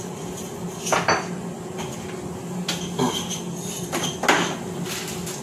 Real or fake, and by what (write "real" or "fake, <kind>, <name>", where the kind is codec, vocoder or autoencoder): real